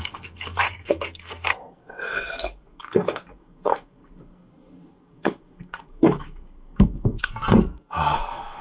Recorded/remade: remade